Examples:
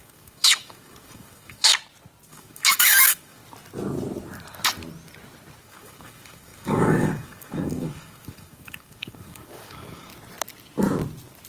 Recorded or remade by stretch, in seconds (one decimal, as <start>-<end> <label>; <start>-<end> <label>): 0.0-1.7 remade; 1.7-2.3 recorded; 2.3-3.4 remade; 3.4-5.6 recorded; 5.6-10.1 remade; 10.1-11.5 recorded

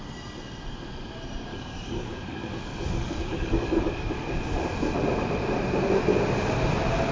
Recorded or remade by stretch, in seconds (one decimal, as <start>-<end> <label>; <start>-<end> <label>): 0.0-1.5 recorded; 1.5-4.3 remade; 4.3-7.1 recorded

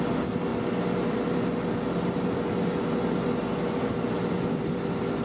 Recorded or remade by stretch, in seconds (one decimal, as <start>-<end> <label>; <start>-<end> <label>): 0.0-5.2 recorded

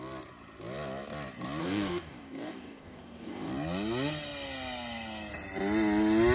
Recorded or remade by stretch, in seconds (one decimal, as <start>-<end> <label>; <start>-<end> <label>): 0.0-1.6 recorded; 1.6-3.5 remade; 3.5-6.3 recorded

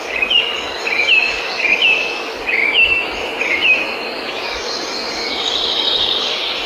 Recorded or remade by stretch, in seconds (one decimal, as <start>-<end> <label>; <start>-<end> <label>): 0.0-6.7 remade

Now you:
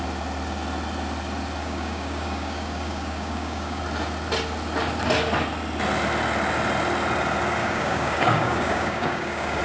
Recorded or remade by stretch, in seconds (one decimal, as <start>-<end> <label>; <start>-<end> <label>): 0.0-1.6 recorded; 1.6-3.8 remade; 3.8-7.6 recorded; 7.6-9.6 remade

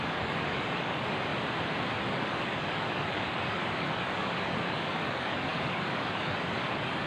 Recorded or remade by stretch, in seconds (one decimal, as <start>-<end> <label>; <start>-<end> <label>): 0.0-1.3 remade; 1.3-2.0 recorded; 2.0-7.1 remade